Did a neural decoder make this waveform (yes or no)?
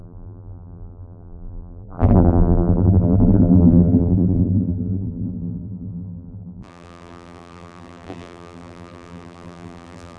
yes